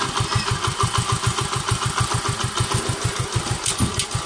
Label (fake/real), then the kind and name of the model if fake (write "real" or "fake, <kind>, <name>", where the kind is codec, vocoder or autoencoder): real